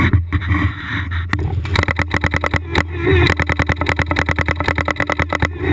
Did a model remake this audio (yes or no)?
no